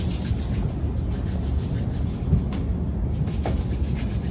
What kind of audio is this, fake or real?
real